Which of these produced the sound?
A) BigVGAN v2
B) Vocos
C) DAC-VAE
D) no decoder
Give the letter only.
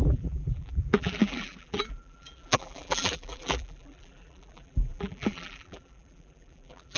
A